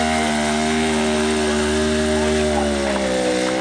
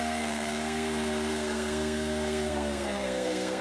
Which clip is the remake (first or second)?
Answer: second